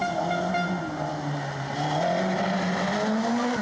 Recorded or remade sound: recorded